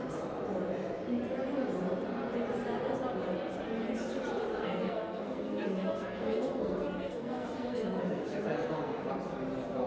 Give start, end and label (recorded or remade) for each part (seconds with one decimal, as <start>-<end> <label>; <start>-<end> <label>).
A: 0.0-4.5 recorded; 4.5-9.1 remade; 9.1-9.9 recorded